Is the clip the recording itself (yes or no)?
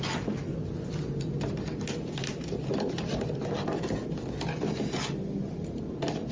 yes